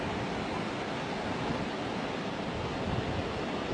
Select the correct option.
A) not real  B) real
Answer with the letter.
B